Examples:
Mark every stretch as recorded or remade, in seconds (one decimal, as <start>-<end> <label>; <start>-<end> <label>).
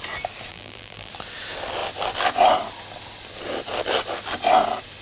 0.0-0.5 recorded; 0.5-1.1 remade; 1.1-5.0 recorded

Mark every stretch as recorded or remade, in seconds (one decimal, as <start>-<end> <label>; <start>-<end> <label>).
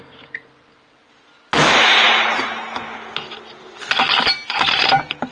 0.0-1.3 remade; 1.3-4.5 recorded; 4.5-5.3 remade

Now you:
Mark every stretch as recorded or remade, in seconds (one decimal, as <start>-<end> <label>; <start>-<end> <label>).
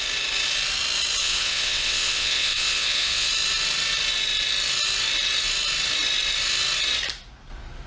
0.0-1.2 recorded; 1.2-3.3 remade; 3.3-7.9 recorded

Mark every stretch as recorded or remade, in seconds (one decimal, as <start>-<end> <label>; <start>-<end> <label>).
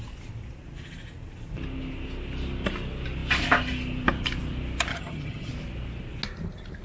0.0-4.9 recorded; 4.9-5.5 remade; 5.5-6.8 recorded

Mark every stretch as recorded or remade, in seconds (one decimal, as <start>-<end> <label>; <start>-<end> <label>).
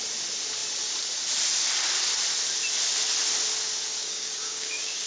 0.0-4.0 recorded; 4.0-5.1 remade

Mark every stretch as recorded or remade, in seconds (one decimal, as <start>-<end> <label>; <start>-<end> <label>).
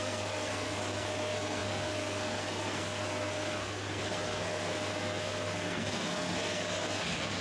0.0-7.4 remade